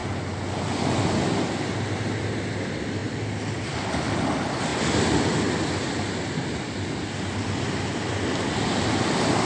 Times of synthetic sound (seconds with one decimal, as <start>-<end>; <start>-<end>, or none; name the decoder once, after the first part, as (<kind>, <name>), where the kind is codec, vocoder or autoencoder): none